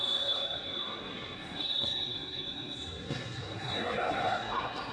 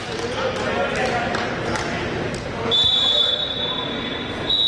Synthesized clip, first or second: first